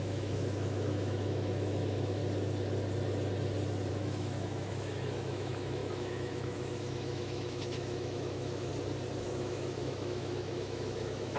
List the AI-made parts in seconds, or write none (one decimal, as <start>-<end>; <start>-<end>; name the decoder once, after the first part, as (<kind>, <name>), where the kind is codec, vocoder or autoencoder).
0.0-2.2 (autoencoder, DAC-VAE); 3.9-8.7; 9.2-11.4